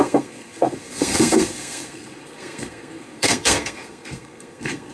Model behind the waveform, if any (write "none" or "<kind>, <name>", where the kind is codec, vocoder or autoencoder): codec, SNAC